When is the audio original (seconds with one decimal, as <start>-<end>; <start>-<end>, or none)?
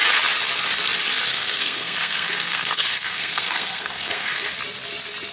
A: 0.0-1.3; 4.5-5.3